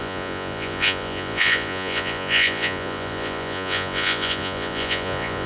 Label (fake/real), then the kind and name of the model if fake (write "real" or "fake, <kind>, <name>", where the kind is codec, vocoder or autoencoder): fake, vocoder, Vocos